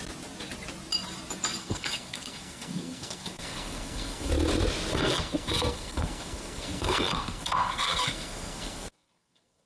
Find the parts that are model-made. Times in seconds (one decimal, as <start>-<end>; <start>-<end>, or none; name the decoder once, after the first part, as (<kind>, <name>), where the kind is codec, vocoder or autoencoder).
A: 1.6-4.3 (codec, SNAC); 4.9-9.7